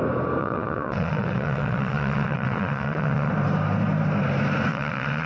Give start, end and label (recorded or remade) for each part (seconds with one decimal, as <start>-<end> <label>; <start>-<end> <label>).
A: 0.0-0.4 recorded; 0.4-3.3 remade; 3.3-4.7 recorded; 4.7-5.3 remade